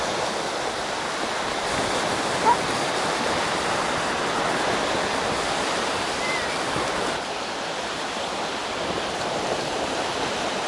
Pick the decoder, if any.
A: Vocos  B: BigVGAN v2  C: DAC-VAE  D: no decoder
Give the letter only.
B